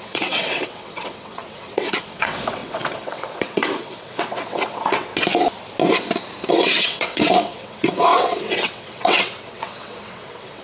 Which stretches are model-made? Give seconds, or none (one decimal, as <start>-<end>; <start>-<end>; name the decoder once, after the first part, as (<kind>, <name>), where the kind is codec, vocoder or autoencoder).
0.0-5.1 (vocoder, WaveNeXt); 6.5-10.6